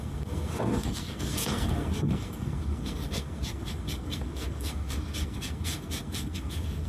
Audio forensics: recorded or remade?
remade